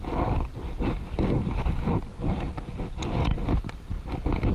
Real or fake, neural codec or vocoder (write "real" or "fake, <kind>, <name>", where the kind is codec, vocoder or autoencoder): real